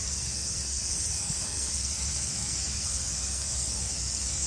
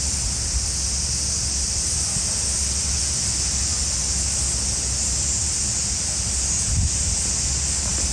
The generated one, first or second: first